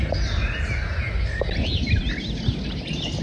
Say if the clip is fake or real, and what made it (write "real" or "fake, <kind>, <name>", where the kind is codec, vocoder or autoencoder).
real